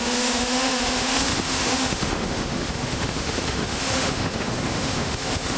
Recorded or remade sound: remade